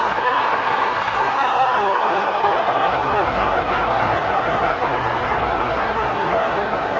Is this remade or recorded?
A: remade